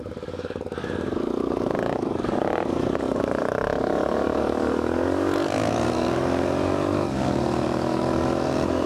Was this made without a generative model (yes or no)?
no